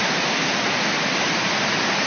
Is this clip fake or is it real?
real